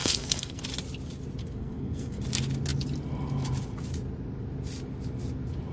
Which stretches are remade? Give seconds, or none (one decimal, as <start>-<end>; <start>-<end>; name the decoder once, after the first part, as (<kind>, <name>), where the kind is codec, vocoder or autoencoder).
0.0-0.6 (codec, SNAC); 1.4-2.2